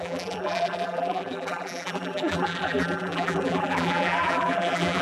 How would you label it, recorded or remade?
remade